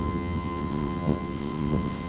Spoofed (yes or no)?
yes